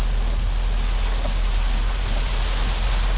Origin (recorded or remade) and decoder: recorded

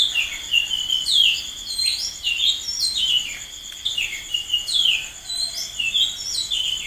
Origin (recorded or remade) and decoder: recorded